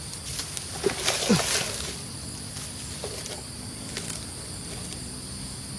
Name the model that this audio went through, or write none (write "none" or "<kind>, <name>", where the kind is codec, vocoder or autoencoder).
none